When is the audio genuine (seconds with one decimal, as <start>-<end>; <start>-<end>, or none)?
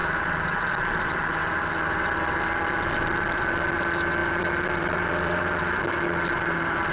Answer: 3.5-4.2; 5.6-6.9